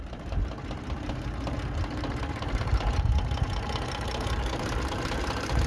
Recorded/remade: remade